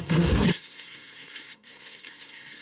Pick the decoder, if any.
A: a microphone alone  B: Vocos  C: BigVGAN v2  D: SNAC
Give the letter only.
D